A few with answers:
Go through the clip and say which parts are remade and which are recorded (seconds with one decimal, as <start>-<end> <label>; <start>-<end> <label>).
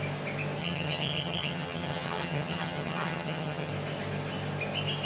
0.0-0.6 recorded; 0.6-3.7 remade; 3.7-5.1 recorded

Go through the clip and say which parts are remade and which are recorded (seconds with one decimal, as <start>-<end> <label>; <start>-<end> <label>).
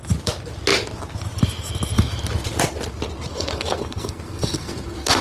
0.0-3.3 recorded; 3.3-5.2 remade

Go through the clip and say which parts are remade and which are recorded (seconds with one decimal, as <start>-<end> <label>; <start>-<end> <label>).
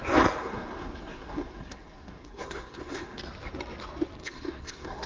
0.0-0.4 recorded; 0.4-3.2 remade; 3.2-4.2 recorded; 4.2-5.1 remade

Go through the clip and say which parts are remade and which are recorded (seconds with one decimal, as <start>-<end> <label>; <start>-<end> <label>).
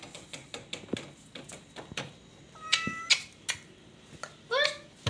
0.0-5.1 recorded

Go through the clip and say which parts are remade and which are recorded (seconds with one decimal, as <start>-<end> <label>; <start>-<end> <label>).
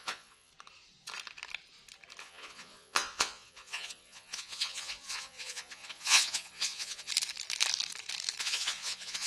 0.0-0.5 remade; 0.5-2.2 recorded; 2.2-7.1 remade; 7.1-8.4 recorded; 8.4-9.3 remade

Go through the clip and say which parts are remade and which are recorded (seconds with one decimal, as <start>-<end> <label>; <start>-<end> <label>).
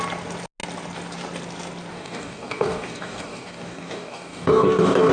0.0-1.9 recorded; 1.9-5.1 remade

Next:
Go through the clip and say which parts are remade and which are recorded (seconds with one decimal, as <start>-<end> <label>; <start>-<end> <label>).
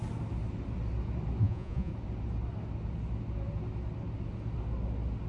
0.0-1.4 recorded; 1.4-1.9 remade; 1.9-5.3 recorded